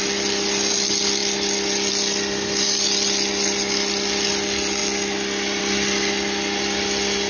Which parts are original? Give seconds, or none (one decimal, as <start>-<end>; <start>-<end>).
0.0-7.3